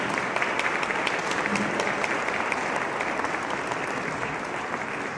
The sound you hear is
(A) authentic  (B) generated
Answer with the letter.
A